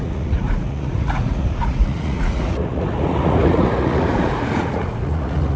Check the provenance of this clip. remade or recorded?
remade